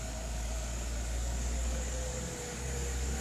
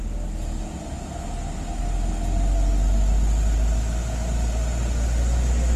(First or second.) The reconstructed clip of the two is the first